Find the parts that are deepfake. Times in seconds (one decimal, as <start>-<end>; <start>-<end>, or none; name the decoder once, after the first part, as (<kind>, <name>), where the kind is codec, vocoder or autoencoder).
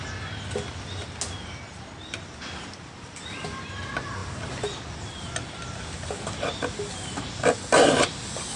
none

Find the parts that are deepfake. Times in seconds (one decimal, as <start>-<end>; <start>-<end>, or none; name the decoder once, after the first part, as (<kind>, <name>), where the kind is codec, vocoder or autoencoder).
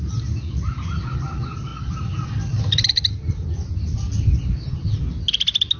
none